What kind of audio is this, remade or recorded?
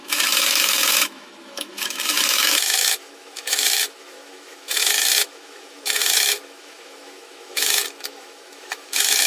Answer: remade